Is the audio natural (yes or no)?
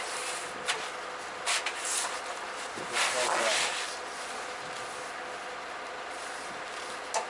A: yes